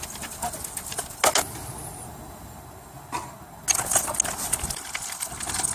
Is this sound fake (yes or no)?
no